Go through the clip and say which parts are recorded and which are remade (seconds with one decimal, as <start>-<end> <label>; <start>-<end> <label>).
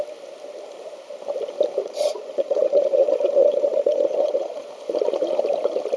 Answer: 0.0-1.8 recorded; 1.8-4.7 remade; 4.7-6.0 recorded